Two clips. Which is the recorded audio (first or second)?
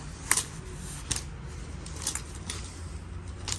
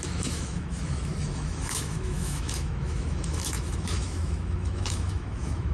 first